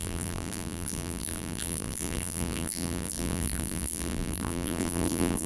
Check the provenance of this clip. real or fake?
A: fake